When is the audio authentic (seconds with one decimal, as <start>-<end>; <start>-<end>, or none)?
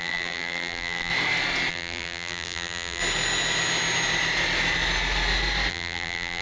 1.1-1.7; 3.0-5.7